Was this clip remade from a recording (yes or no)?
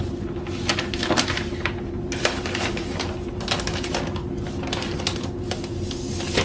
no